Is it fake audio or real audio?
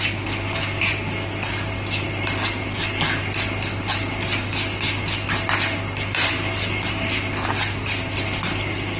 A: real